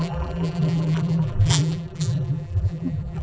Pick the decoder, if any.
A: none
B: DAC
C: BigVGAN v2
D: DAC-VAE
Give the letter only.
C